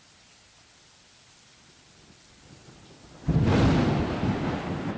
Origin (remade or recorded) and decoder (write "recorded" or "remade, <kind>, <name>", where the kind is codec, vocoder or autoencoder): recorded